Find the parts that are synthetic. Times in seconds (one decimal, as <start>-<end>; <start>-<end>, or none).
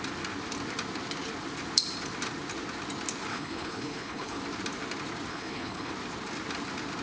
3.3-4.4; 5.3-5.9